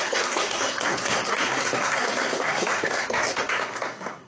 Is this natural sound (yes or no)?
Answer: no